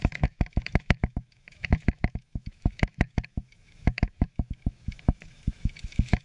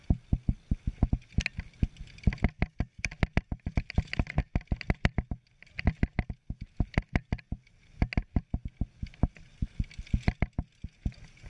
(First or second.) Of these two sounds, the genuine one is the second